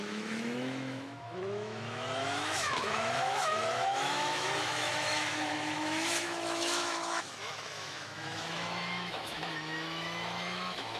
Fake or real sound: fake